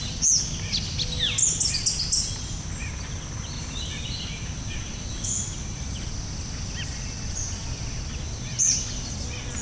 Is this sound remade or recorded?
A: recorded